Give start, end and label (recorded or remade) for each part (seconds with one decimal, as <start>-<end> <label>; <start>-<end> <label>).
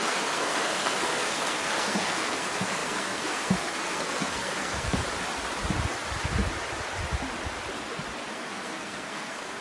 0.0-5.0 remade; 5.0-8.3 recorded; 8.3-9.6 remade